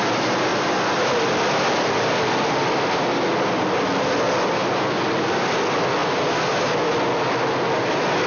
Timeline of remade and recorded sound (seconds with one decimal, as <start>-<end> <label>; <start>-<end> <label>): 0.0-8.3 recorded